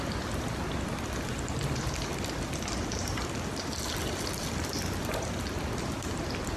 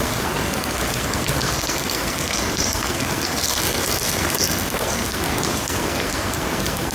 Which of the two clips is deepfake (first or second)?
second